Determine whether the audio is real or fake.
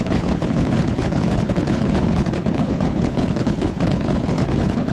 fake